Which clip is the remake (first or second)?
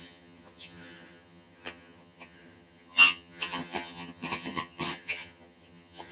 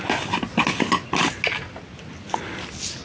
first